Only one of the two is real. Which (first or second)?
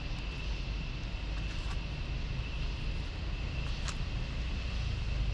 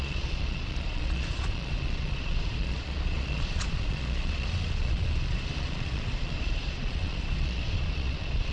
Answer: first